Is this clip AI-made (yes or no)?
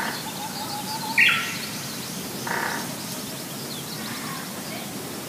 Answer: no